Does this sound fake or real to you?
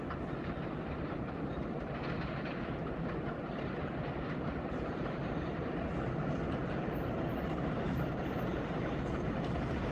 real